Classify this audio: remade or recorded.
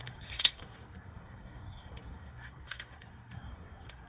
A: remade